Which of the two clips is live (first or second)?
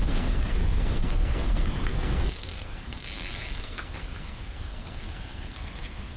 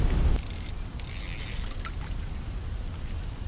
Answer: second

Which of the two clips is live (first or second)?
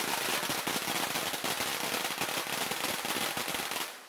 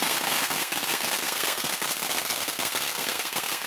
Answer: first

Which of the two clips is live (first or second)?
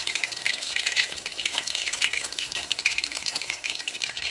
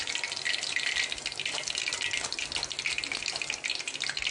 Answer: second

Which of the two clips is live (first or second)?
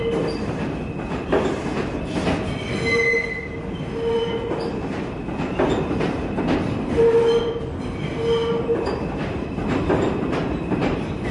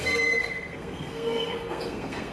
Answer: first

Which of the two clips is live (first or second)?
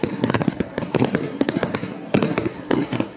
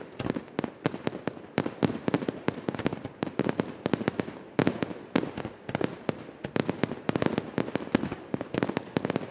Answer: second